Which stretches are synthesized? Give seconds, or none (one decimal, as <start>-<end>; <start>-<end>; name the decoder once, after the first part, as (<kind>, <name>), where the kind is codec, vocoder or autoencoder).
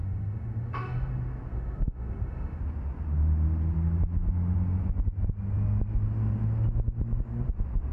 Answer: 0.0-1.1 (autoencoder, DAC-VAE); 1.5-2.6